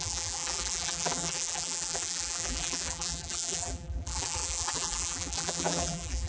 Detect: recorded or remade remade